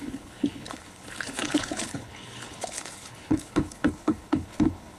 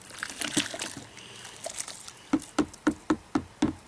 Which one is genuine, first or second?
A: second